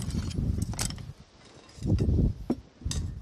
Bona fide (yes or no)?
yes